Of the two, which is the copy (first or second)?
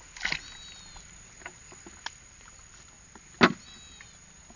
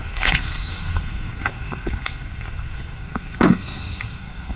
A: second